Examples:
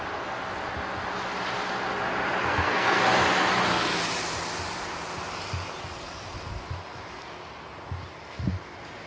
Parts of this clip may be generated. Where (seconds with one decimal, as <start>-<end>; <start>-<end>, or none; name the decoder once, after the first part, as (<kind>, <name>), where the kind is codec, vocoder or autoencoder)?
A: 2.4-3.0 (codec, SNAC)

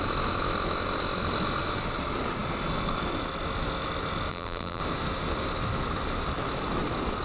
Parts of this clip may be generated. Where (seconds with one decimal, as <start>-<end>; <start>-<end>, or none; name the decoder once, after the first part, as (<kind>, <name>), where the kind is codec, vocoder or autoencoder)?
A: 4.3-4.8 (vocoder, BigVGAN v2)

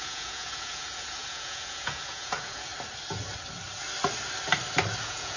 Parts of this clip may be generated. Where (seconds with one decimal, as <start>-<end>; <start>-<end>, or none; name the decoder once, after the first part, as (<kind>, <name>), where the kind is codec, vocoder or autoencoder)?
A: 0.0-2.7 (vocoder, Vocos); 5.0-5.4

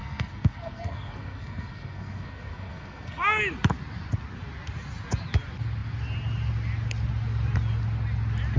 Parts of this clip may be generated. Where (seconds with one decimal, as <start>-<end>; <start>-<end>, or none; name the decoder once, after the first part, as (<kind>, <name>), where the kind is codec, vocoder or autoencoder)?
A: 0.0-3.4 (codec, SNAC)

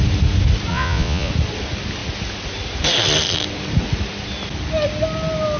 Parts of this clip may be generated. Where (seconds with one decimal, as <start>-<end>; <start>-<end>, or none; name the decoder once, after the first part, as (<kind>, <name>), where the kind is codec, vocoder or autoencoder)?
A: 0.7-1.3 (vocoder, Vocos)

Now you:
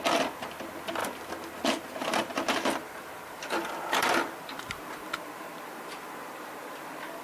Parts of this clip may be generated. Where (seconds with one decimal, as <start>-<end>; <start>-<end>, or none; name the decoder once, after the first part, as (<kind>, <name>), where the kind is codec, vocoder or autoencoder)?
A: 0.0-1.0 (vocoder, BigVGAN v2); 1.8-7.2

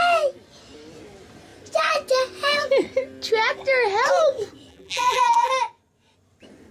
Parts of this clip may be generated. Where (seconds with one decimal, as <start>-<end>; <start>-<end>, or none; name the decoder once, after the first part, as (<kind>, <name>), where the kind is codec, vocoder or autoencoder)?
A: 4.7-5.5 (vocoder, BigVGAN v2)

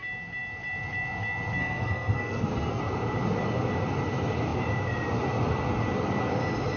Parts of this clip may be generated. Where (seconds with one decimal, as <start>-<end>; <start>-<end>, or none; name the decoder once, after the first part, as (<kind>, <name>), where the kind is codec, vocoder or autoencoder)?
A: 1.6-2.8 (codec, SNAC)